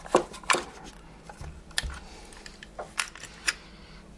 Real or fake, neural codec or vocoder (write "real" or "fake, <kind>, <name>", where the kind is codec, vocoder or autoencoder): real